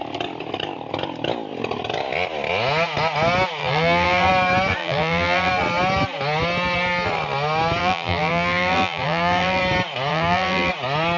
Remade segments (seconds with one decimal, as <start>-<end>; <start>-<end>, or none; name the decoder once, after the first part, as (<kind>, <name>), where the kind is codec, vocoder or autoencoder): 3.6-4.3 (vocoder, BigVGAN v2); 4.8-5.5; 7.8-9.6; 10.1-10.7